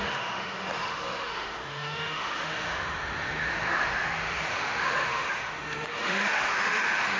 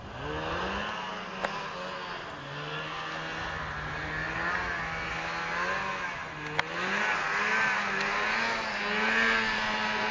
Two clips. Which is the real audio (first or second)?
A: second